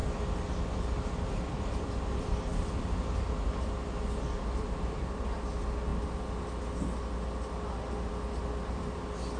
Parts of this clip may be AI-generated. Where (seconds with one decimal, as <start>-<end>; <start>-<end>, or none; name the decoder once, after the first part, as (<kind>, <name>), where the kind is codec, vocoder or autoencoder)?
none